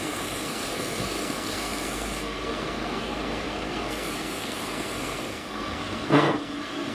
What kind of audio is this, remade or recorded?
remade